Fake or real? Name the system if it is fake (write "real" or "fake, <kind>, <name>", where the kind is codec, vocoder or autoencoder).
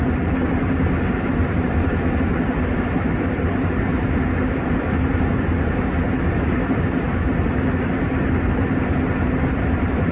fake, vocoder, BigVGAN v2